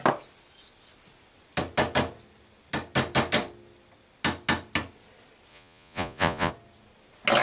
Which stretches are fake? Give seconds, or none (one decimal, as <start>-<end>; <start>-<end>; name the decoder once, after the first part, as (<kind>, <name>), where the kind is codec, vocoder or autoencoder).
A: 5.5-6.5 (vocoder, Vocos)

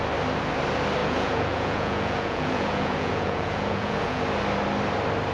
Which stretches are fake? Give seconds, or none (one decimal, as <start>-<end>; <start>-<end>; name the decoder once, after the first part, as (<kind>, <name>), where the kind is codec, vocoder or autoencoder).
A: 1.0-4.2 (vocoder, Vocos)

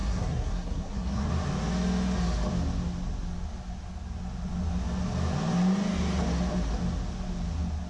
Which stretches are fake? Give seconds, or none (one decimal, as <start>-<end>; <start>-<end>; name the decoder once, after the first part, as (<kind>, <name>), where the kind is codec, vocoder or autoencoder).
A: 0.0-1.3 (codec, SNAC)

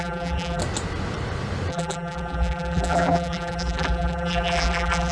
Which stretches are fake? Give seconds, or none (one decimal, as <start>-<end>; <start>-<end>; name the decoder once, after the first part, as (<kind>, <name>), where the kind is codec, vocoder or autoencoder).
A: 0.0-0.6 (vocoder, BigVGAN v2); 1.7-5.1

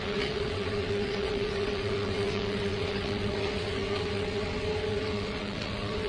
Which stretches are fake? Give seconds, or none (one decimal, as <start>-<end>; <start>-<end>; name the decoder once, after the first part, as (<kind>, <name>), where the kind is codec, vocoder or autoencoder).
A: 0.0-6.1 (vocoder, WaveNeXt)

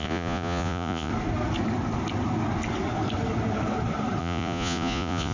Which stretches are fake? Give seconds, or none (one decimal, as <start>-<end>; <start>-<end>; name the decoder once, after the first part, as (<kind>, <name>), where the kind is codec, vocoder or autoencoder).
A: 0.0-1.1 (vocoder, Vocos); 4.2-5.3

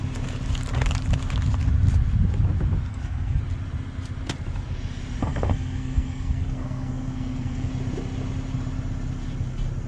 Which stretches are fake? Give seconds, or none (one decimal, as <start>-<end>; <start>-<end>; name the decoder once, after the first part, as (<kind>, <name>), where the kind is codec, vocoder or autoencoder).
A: 2.9-3.4 (codec, SNAC); 5.2-7.7

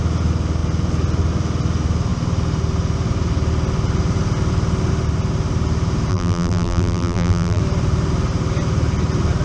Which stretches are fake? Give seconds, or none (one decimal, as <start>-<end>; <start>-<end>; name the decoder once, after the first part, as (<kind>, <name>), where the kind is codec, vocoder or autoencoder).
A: 6.1-7.6 (vocoder, BigVGAN v2)